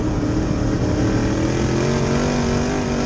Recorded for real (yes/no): yes